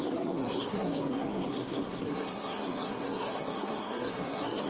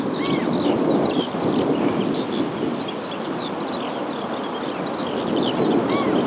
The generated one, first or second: first